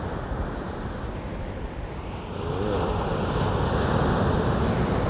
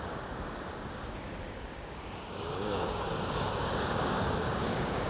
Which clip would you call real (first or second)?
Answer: first